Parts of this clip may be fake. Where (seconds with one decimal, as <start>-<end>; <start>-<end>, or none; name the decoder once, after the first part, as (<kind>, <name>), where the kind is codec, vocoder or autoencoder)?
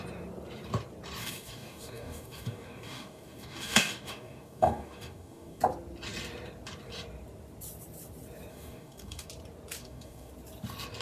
1.2-5.6 (codec, DAC); 8.5-9.3; 9.8-10.3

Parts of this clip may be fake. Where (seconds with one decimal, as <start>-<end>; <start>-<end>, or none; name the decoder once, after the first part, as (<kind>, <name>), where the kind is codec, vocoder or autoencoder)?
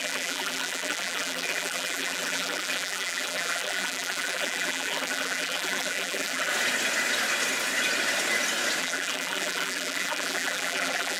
0.0-6.5 (vocoder, BigVGAN v2); 8.8-11.2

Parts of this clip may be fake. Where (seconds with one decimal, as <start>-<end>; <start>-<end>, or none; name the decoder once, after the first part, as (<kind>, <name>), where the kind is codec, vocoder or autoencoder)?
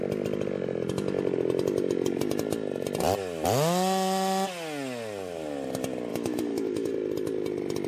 6.1-6.9 (autoencoder, DAC-VAE)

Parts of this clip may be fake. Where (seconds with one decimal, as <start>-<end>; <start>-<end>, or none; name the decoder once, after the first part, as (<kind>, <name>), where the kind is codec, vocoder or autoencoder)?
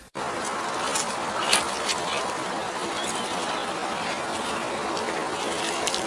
none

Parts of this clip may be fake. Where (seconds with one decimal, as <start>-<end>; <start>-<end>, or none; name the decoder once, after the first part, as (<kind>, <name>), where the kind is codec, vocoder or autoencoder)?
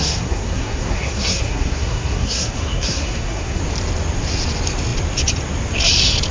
0.0-3.6 (codec, SNAC)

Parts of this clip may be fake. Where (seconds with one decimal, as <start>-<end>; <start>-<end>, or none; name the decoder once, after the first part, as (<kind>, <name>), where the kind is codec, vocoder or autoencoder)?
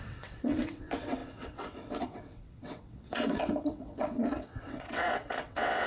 0.0-5.9 (vocoder, WaveNeXt)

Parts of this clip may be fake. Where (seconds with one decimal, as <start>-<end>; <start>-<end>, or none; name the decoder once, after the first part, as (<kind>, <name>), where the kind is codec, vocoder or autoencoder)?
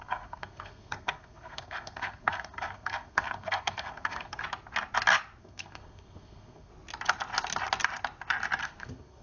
0.0-4.4 (codec, SNAC); 5.4-6.7; 8.6-9.2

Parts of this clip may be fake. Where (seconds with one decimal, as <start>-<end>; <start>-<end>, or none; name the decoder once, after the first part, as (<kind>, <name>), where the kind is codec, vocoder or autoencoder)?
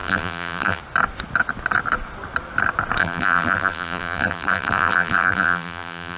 0.0-0.8 (vocoder, BigVGAN v2); 3.0-6.2